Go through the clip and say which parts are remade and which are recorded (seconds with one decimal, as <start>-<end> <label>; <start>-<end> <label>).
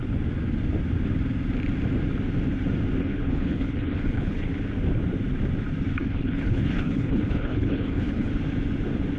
0.0-3.0 recorded; 3.0-4.5 remade; 4.5-6.0 recorded; 6.0-8.3 remade; 8.3-9.2 recorded